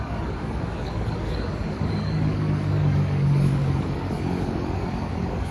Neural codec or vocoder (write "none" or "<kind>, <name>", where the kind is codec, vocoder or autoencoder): codec, DAC